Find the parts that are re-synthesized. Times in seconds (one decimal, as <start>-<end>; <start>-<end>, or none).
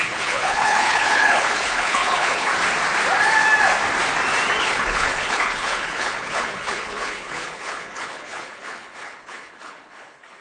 0.0-2.5; 4.6-10.4